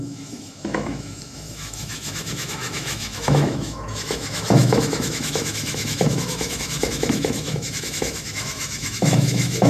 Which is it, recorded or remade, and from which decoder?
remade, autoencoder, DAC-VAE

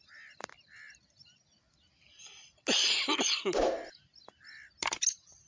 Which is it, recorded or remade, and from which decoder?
recorded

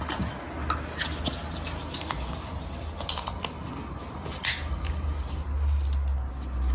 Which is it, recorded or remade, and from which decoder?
recorded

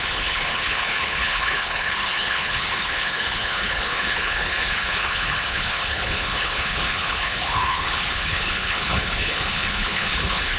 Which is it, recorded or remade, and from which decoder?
remade, codec, HILCodec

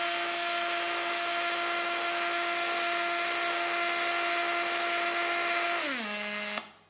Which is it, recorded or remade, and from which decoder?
recorded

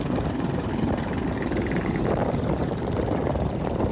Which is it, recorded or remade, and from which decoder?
remade, vocoder, BigVGAN v2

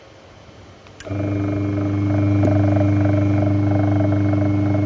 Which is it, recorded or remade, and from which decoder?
recorded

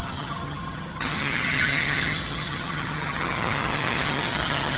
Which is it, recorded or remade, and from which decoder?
remade, vocoder, HiFi-GAN